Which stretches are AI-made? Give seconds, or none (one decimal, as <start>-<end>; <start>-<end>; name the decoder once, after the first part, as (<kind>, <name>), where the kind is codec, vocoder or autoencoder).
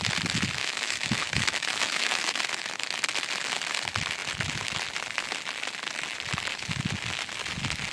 0.6-2.4 (autoencoder, DAC-VAE)